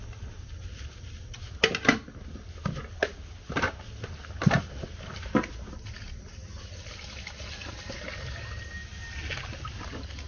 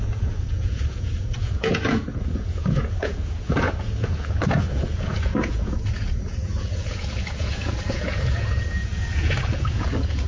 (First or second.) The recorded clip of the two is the first